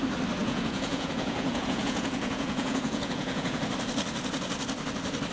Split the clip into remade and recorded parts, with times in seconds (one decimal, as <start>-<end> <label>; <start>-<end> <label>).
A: 0.0-0.4 recorded; 0.4-3.6 remade; 3.6-5.3 recorded